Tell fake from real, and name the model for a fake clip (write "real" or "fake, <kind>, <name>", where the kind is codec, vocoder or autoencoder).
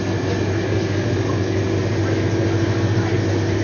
real